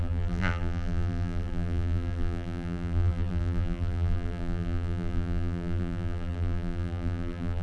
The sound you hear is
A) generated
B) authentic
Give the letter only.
A